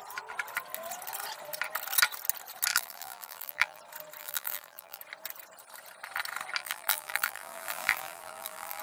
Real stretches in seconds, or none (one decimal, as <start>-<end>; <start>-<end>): 0.0-2.7; 3.8-4.2; 5.0-6.6